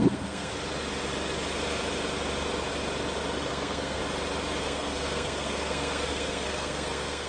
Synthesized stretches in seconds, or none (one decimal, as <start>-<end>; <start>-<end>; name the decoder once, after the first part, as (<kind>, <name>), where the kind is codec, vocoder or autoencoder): 0.0-0.5 (codec, SNAC); 3.5-4.0; 4.6-7.3